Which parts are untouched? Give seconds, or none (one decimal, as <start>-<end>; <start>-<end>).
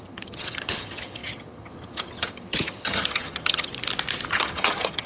3.7-4.3